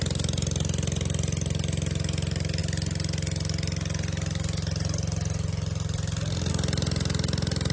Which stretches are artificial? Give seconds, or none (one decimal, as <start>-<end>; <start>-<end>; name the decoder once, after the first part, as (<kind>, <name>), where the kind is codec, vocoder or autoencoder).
none